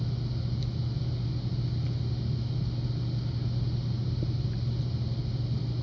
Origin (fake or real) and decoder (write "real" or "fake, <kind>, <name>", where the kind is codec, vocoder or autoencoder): real